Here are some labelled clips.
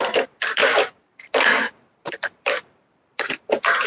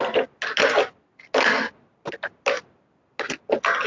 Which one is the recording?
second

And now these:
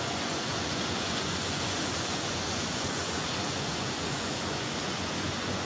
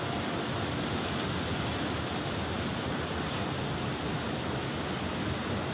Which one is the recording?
second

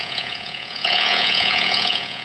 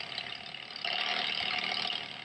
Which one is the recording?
second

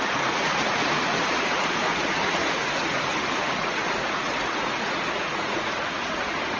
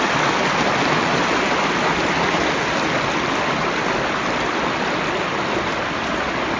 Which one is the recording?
second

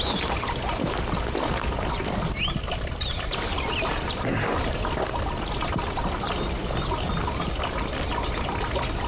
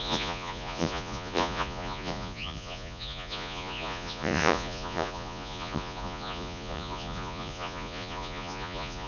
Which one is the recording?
first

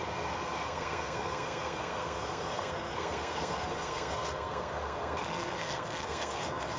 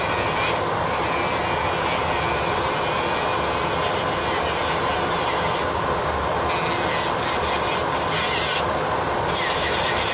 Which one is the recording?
second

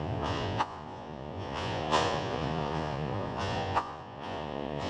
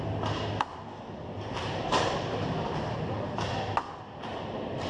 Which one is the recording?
second